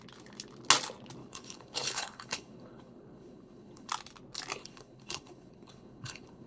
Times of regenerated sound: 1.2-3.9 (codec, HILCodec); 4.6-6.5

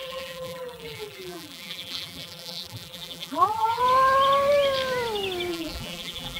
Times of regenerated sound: 0.0-3.8 (vocoder, BigVGAN v2); 5.5-6.4

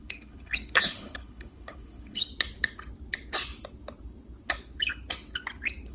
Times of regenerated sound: 0.0-2.3 (codec, HILCodec)

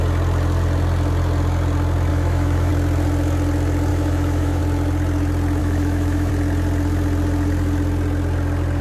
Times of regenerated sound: 2.1-2.7 (autoencoder, DAC-VAE); 3.9-4.6; 5.6-6.3

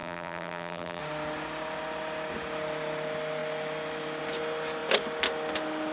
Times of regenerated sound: 0.0-1.0 (vocoder, BigVGAN v2)